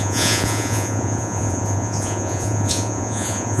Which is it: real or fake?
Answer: fake